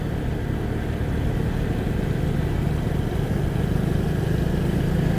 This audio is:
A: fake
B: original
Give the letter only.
B